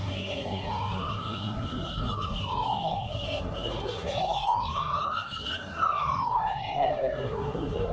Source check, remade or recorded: remade